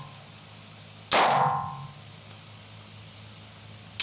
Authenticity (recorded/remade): recorded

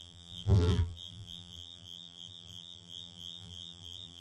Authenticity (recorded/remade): remade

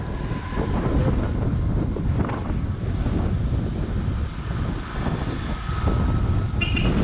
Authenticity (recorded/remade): recorded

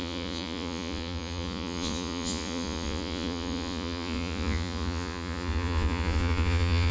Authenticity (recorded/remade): remade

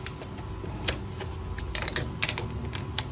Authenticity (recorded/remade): recorded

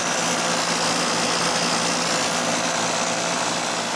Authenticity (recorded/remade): recorded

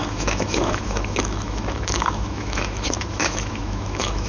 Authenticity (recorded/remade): remade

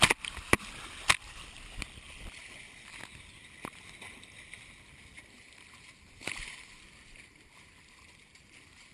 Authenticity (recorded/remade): recorded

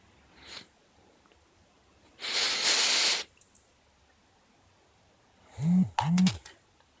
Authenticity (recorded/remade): recorded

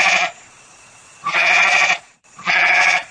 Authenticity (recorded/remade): remade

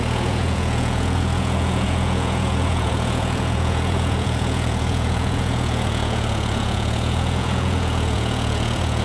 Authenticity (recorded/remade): remade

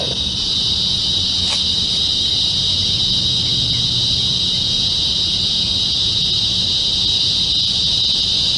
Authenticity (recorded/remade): recorded